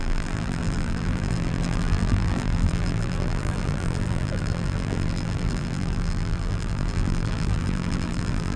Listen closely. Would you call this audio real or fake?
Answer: fake